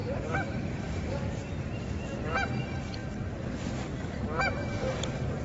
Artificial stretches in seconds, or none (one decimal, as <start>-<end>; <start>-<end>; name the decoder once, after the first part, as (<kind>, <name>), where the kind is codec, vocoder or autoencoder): 0.0-1.4 (vocoder, BigVGAN v2); 2.6-3.0; 3.7-5.4